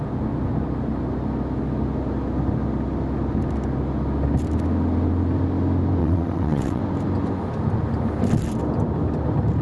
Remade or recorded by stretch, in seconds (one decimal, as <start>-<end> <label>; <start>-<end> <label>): 0.0-6.0 recorded; 6.0-6.8 remade; 6.8-9.6 recorded